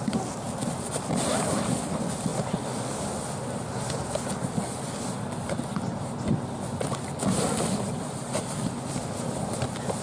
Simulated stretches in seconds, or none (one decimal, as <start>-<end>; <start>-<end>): none